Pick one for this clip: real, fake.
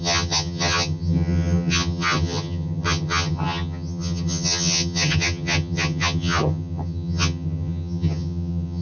fake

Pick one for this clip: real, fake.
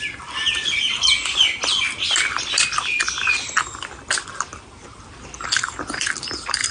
real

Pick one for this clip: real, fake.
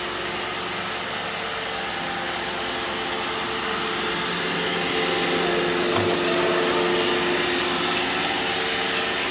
real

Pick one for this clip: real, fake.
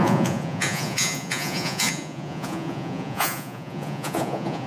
fake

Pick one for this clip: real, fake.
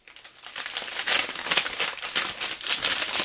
real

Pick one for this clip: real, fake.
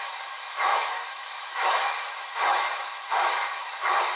fake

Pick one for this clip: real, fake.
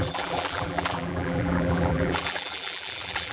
fake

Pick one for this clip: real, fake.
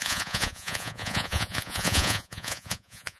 fake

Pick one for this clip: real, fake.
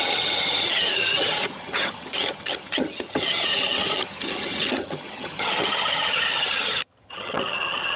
fake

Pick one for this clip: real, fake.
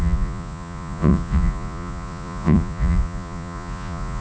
fake